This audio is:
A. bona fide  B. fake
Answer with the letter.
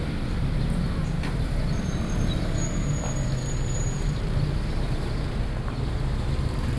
B